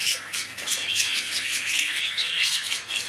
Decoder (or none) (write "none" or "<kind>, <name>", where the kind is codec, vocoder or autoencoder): codec, SNAC